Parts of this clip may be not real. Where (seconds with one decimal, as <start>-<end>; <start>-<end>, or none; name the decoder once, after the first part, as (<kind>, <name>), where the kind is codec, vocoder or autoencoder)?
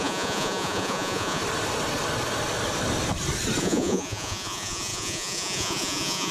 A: 0.0-1.4 (vocoder, Vocos); 3.6-6.3